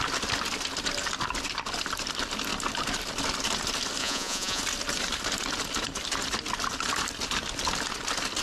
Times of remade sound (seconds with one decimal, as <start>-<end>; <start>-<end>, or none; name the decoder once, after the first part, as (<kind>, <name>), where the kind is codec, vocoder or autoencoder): 4.0-4.6 (vocoder, Vocos)